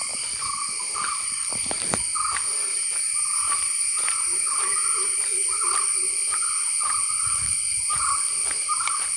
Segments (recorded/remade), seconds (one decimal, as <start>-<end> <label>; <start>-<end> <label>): 0.0-2.1 remade; 2.1-5.5 recorded; 5.5-6.2 remade; 6.2-7.0 recorded; 7.0-9.2 remade